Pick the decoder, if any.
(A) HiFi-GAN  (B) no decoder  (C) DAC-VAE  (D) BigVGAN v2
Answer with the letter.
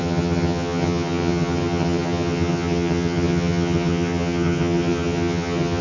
A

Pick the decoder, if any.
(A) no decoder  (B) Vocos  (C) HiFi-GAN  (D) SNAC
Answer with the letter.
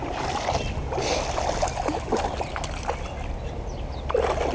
A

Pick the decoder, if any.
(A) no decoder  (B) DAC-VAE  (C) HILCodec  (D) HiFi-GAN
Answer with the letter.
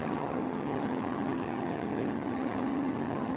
D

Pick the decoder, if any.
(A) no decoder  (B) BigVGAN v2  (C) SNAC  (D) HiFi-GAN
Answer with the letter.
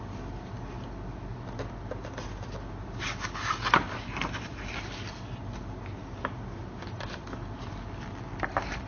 A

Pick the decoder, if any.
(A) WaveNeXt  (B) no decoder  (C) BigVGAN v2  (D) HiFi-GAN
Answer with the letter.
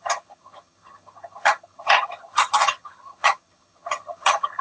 D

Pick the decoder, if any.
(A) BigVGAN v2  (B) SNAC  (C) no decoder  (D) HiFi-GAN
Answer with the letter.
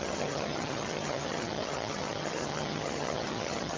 D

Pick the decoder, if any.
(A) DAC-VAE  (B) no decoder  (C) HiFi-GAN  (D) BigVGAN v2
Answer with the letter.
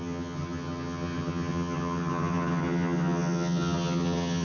C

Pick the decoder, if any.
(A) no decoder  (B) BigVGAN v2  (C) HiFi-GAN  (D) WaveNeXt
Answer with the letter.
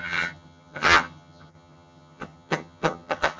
C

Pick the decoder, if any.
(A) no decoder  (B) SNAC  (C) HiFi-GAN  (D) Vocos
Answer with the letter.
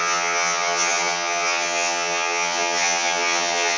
C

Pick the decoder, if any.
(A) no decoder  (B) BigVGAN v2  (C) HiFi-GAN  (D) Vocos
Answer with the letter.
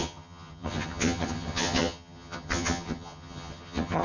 C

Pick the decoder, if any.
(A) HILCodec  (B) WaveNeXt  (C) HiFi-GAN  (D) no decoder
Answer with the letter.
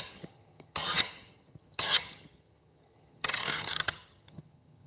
C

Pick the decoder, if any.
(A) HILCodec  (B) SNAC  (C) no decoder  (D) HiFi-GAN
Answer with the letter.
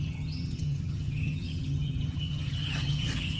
D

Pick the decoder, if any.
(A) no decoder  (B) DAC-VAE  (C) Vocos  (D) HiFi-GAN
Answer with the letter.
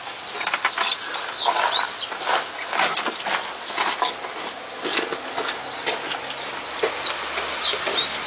A